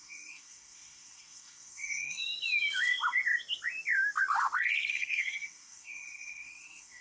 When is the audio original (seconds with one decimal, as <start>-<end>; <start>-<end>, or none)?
2.2-4.9